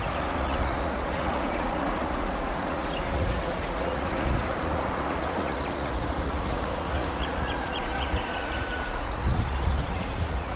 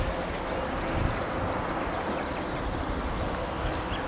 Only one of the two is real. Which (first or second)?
second